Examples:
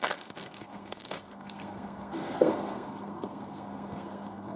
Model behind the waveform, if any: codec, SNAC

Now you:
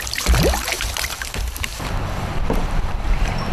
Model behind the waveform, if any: vocoder, BigVGAN v2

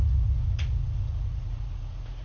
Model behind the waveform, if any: vocoder, Vocos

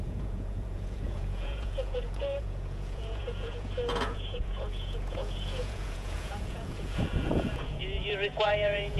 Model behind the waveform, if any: vocoder, Vocos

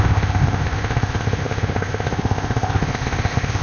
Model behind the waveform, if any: codec, ZipCodec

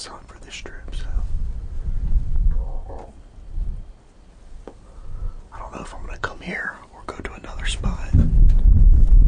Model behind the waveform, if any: none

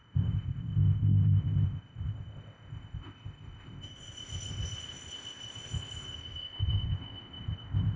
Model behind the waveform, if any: codec, ZipCodec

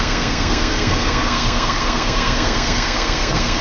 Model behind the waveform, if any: codec, SNAC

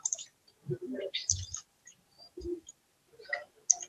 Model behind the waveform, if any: none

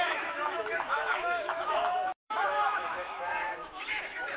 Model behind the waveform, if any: autoencoder, DAC-VAE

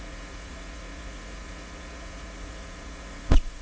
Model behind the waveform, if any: vocoder, Vocos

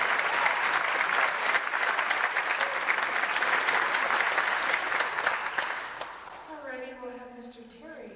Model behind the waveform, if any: none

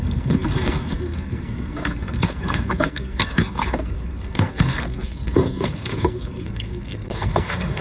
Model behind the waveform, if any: codec, SNAC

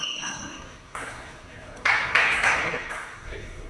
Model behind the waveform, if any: codec, SNAC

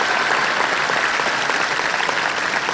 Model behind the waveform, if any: none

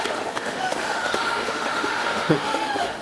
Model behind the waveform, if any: autoencoder, DAC-VAE